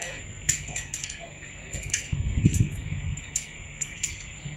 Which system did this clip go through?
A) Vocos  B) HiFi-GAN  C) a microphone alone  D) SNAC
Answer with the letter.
D